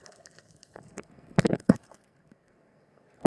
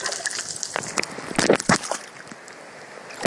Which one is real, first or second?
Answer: second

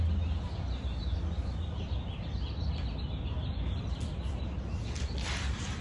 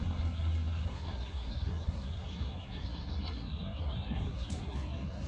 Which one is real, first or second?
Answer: first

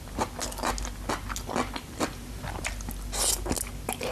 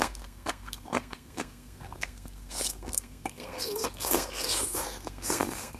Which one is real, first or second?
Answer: first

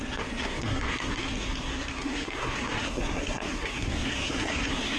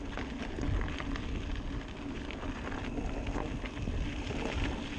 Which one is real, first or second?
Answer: second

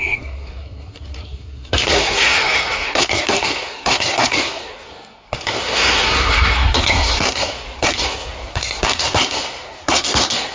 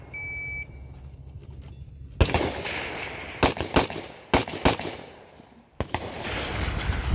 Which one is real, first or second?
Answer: second